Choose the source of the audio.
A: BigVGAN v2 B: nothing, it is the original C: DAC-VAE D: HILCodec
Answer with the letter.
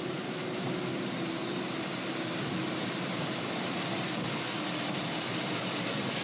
B